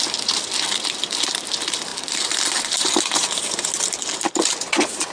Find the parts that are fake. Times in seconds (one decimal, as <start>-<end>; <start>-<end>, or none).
none